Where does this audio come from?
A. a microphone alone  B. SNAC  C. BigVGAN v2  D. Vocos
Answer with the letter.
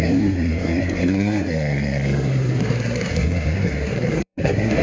B